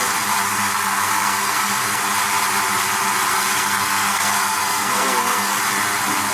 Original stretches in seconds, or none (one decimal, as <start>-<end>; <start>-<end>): 0.0-0.5; 2.0-3.3; 5.6-6.3